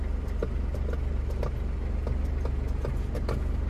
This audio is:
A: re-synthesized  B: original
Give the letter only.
B